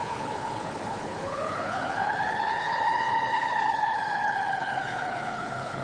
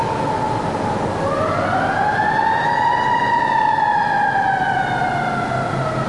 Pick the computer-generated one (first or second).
first